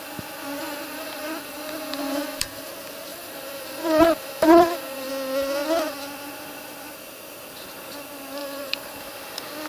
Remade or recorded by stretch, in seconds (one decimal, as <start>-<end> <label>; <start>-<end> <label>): 0.0-0.6 recorded; 0.6-2.7 remade; 2.7-3.1 recorded; 3.1-5.1 remade; 5.1-8.4 recorded; 8.4-9.0 remade; 9.0-9.7 recorded